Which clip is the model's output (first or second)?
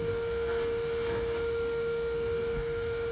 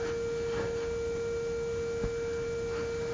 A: first